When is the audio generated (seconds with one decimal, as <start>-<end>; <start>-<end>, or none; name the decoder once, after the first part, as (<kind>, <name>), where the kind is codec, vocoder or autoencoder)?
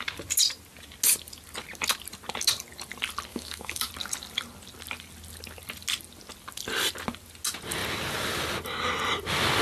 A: 3.3-3.9 (autoencoder, DAC-VAE)